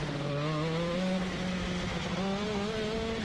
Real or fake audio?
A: real